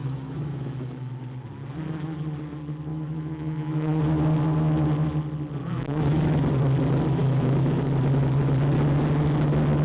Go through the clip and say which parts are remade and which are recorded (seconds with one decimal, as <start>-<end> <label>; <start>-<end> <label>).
0.0-1.1 remade; 1.1-2.9 recorded; 2.9-4.0 remade; 4.0-5.6 recorded; 5.6-6.5 remade; 6.5-7.2 recorded; 7.2-7.8 remade; 7.8-9.8 recorded